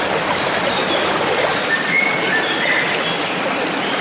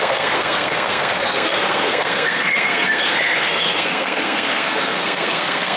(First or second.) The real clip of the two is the first